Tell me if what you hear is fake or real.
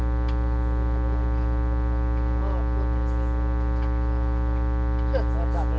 real